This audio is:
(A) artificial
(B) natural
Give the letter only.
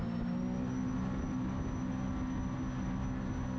B